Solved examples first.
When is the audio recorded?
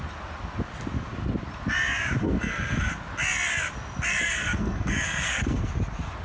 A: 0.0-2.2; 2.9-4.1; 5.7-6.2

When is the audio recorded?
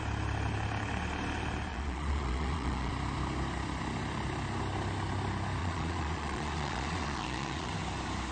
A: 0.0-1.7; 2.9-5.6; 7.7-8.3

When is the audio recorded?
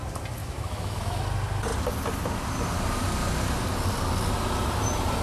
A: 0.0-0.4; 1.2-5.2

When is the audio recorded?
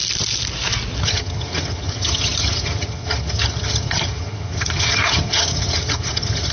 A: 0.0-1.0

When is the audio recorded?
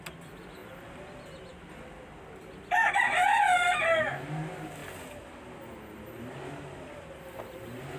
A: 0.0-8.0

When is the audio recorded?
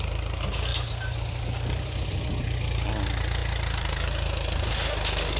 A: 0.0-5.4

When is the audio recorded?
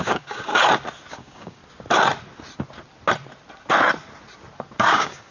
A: 0.5-1.1; 1.6-4.8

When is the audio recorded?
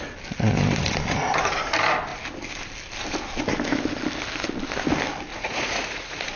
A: 0.0-5.3